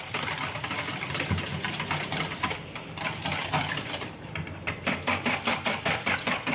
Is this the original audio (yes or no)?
no